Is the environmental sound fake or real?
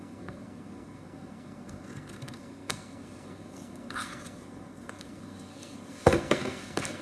fake